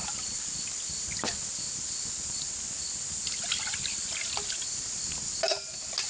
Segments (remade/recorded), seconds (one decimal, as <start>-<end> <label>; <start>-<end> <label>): 0.0-6.1 recorded